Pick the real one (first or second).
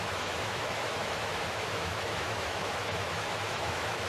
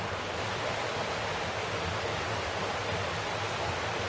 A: second